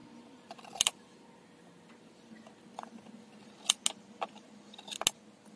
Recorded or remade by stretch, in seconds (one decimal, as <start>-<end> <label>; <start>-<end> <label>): 0.0-3.4 remade; 3.4-5.6 recorded